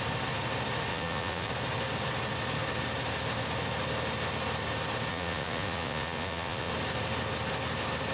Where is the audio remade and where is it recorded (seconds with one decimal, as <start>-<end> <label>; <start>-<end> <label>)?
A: 0.0-0.9 recorded; 0.9-1.5 remade; 1.5-5.1 recorded; 5.1-6.7 remade; 6.7-8.1 recorded